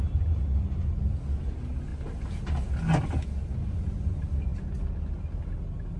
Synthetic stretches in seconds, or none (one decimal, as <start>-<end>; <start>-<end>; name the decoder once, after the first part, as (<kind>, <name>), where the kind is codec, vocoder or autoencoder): none